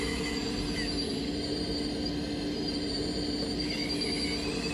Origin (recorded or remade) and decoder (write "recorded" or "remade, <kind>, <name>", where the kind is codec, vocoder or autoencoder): recorded